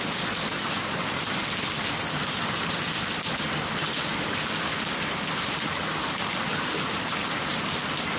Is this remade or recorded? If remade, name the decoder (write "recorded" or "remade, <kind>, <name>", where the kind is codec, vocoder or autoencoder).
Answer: recorded